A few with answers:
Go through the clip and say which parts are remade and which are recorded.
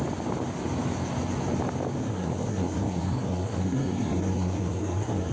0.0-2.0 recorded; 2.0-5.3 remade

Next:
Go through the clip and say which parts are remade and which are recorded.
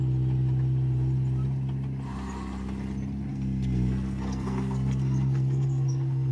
0.0-3.3 recorded; 3.3-6.3 remade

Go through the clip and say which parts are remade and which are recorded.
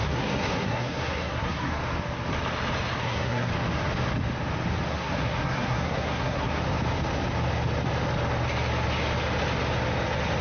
0.0-1.8 remade; 1.8-3.0 recorded; 3.0-3.5 remade; 3.5-4.9 recorded; 4.9-6.6 remade; 6.6-10.4 recorded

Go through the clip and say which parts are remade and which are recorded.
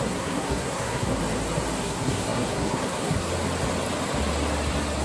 0.0-1.2 remade; 1.2-1.8 recorded; 1.8-3.3 remade; 3.3-5.0 recorded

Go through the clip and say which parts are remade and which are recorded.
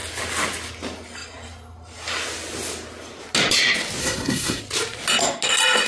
0.0-4.0 recorded; 4.0-4.6 remade; 4.6-5.9 recorded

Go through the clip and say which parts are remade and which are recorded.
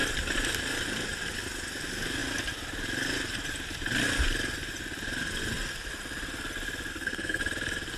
0.0-6.9 recorded; 6.9-7.4 remade; 7.4-8.0 recorded